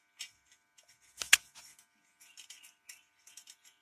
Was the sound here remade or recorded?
recorded